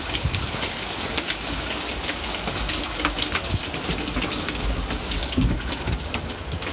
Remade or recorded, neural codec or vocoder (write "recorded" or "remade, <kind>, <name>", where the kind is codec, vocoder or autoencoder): remade, codec, DAC